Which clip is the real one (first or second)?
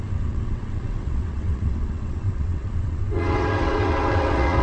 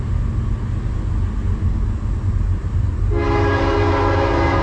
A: second